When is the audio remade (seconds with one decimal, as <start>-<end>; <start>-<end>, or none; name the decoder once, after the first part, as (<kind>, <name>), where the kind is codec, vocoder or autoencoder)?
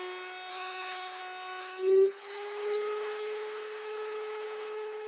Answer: 0.5-1.2 (codec, HILCodec); 1.6-5.1